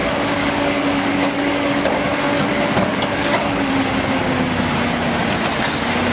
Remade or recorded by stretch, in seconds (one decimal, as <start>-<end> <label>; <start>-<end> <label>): 0.0-3.7 remade; 3.7-6.1 recorded